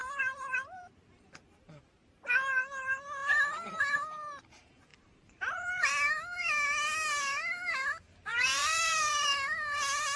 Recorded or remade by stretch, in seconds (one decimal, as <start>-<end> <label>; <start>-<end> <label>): 0.0-1.0 remade; 1.0-4.9 recorded; 4.9-5.9 remade; 5.9-8.3 recorded; 8.3-9.3 remade; 9.3-10.2 recorded